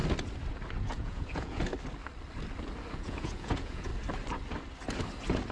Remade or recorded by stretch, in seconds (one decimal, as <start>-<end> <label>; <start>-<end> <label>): 0.0-0.8 recorded; 0.8-1.7 remade; 1.7-2.9 recorded; 2.9-3.9 remade; 3.9-5.5 recorded